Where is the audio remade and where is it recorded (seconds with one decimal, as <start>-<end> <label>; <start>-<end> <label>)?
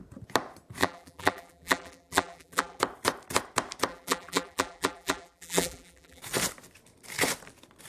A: 0.0-0.8 recorded; 0.8-2.8 remade; 2.8-3.9 recorded; 3.9-6.2 remade; 6.2-7.9 recorded